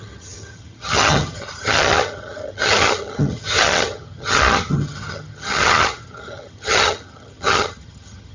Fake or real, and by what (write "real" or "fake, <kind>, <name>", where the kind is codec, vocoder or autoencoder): fake, vocoder, HiFi-GAN